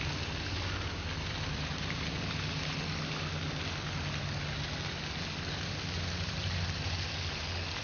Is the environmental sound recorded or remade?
recorded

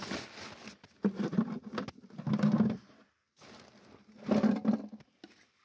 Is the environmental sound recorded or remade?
recorded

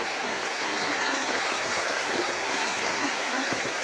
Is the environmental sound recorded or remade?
remade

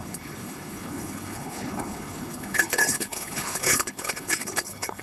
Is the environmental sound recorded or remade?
remade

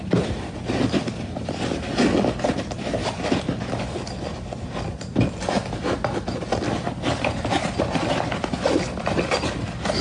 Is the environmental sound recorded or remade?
recorded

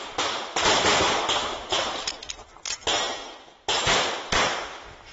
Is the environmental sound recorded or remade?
recorded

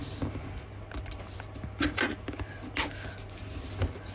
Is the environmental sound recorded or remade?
recorded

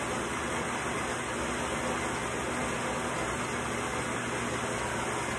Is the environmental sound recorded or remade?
recorded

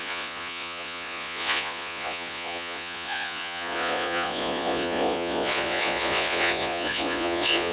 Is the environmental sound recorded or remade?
remade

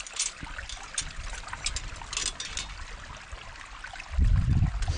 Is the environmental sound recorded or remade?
recorded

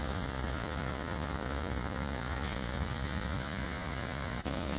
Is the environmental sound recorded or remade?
remade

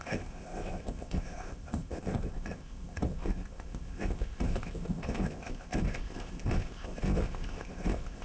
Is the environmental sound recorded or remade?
remade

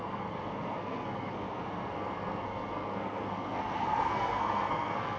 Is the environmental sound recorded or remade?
remade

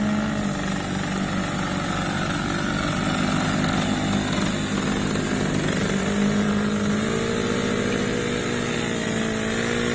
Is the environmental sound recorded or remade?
recorded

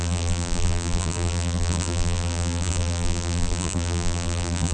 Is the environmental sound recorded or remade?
remade